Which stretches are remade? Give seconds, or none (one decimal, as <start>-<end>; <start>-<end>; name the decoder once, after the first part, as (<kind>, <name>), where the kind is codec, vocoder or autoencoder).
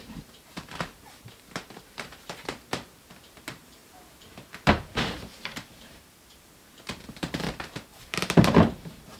0.0-9.2 (vocoder, BigVGAN v2)